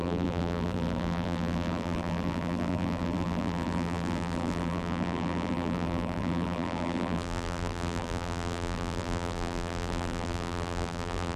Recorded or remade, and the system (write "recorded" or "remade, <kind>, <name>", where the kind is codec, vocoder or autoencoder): remade, vocoder, BigVGAN v2